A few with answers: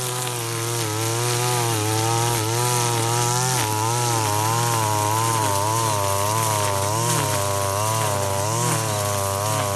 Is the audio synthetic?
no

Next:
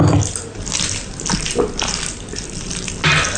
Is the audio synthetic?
no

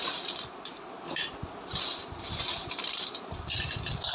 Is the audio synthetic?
no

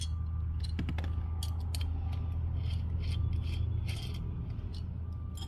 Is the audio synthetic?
no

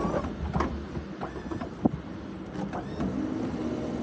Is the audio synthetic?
no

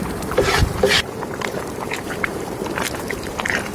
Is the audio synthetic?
yes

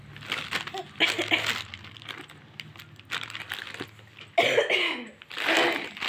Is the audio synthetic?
no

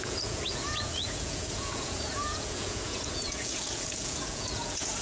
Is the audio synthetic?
yes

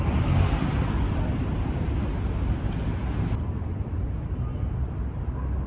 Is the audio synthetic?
no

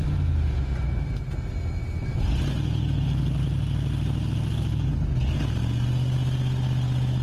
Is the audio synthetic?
no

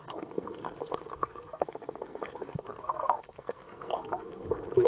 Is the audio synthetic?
yes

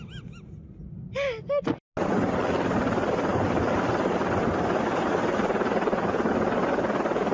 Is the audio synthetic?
no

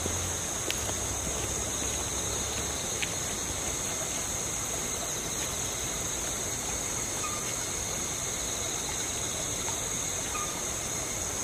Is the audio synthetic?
no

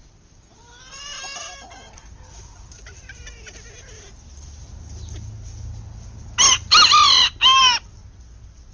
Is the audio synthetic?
no